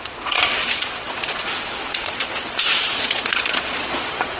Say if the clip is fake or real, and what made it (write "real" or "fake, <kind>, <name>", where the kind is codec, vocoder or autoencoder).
fake, vocoder, Vocos